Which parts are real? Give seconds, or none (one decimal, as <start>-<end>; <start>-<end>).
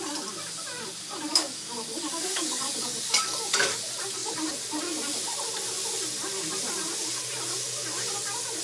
0.0-1.3; 3.8-8.6